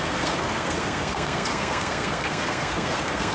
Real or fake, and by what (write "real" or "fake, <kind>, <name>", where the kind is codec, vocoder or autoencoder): fake, codec, SNAC